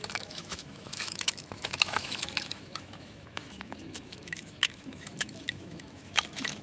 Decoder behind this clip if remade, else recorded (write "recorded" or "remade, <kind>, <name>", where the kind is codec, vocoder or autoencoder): remade, autoencoder, DAC-VAE